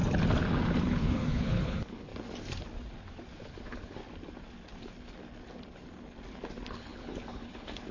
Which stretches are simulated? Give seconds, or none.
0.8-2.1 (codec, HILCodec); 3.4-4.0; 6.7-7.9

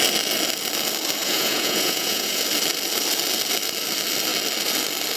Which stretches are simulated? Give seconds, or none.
1.2-2.4 (vocoder, Vocos)

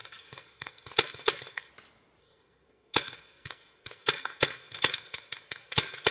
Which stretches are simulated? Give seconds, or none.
0.0-1.7 (codec, SNAC); 2.2-6.1

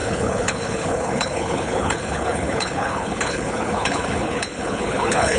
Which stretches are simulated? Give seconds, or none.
0.0-5.4 (codec, HILCodec)

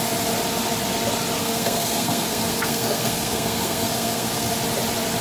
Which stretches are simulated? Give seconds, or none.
1.4-4.5 (codec, SNAC)

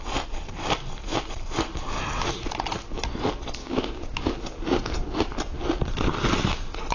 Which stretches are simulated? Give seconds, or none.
3.6-4.4 (codec, DAC)

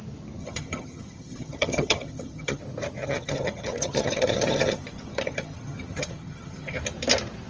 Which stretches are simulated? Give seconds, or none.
0.4-2.6 (vocoder, HiFi-GAN); 3.0-6.8

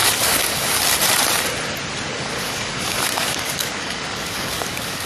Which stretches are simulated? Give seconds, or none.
0.0-0.8 (codec, DAC); 2.1-5.1